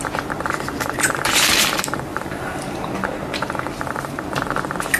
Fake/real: fake